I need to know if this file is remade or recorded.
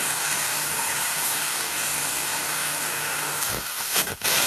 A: remade